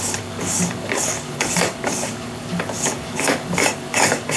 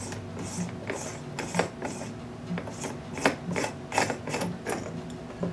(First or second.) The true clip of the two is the second